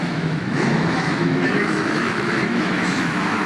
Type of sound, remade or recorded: remade